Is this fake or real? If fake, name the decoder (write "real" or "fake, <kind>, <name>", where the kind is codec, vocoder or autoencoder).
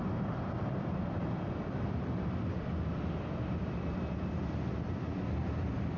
fake, vocoder, BigVGAN v2